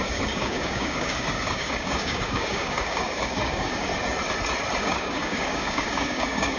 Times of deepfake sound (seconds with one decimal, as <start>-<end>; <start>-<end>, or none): 0.0-3.9; 4.8-6.6